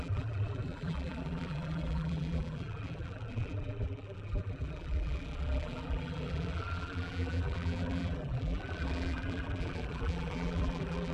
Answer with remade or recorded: remade